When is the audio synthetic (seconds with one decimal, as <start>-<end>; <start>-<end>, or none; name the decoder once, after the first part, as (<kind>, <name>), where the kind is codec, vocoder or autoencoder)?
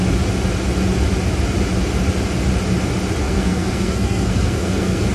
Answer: 3.2-5.1 (codec, SNAC)